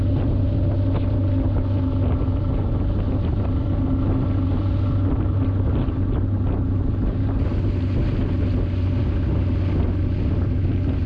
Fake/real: real